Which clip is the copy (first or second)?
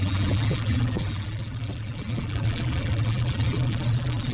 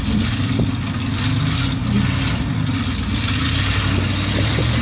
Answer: first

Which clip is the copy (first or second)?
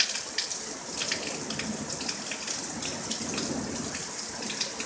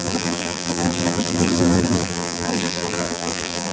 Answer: second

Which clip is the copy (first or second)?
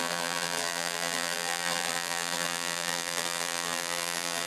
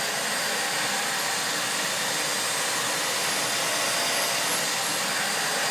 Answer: first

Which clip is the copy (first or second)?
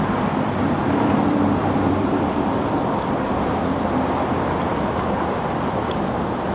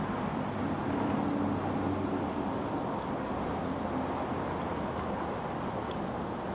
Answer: first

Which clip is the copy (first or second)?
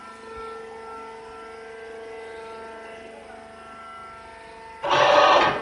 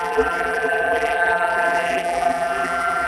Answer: second